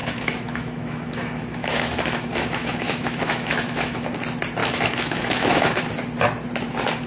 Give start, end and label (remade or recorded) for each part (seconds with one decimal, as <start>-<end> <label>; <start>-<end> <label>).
0.0-4.0 remade; 4.0-4.6 recorded; 4.6-5.8 remade; 5.8-7.1 recorded